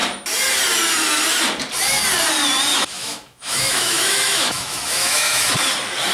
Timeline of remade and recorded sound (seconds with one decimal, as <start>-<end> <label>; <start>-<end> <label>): 0.0-2.7 recorded; 2.7-5.5 remade; 5.5-6.1 recorded

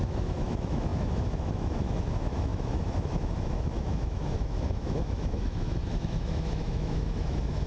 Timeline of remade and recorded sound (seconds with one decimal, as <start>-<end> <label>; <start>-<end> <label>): 0.0-7.7 remade